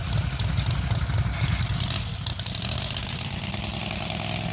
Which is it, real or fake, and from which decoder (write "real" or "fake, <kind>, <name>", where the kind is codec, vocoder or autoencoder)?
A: real